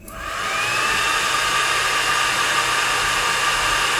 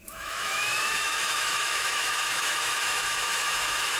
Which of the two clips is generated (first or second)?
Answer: second